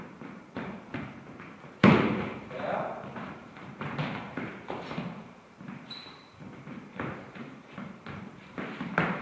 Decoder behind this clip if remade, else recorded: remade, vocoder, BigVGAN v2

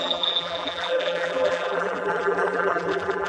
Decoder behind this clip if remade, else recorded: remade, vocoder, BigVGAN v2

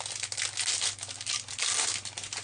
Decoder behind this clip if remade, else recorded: recorded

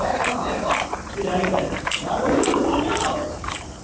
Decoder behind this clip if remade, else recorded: remade, vocoder, BigVGAN v2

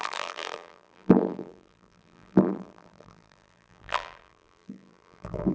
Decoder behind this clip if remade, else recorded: remade, vocoder, BigVGAN v2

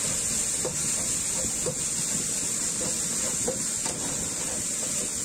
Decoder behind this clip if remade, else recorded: recorded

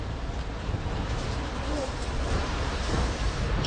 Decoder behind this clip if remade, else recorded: remade, vocoder, BigVGAN v2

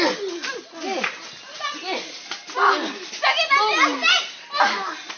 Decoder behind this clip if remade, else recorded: recorded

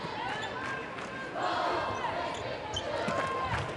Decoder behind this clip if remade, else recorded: recorded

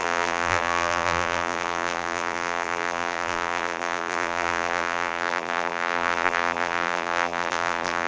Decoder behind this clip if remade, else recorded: remade, vocoder, BigVGAN v2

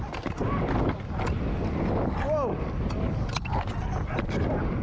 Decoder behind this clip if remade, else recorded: recorded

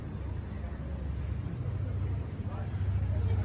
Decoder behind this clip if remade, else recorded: recorded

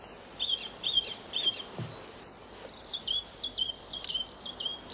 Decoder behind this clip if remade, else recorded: recorded